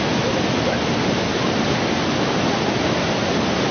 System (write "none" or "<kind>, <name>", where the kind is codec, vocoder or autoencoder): none